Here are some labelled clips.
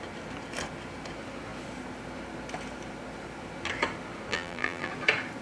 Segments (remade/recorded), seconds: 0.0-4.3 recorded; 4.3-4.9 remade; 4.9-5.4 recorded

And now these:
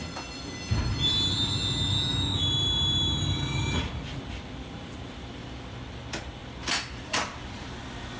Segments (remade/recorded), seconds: 0.0-2.1 recorded; 2.1-6.0 remade; 6.0-6.4 recorded; 6.4-7.7 remade; 7.7-8.2 recorded